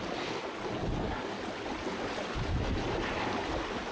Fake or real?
real